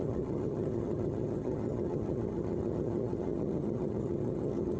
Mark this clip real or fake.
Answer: fake